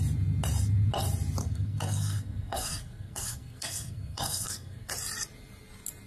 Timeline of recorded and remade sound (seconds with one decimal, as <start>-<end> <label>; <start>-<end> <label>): 0.0-1.4 recorded; 1.4-4.9 remade; 4.9-6.1 recorded